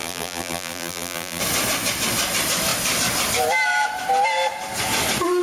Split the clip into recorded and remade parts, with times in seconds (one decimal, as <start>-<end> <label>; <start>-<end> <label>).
0.0-1.4 remade; 1.4-5.4 recorded